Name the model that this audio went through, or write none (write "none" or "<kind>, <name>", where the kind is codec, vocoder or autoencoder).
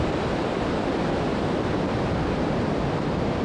vocoder, BigVGAN v2